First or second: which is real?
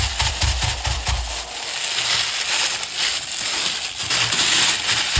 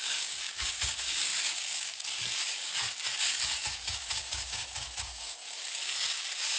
first